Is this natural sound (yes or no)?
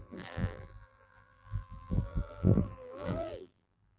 no